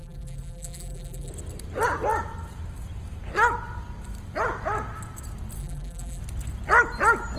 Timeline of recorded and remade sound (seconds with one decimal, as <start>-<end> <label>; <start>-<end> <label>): 0.0-1.3 remade; 1.3-5.6 recorded; 5.6-6.2 remade; 6.2-7.4 recorded